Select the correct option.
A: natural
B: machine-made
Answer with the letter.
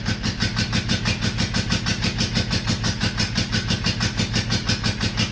A